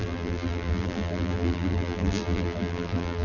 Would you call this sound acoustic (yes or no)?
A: no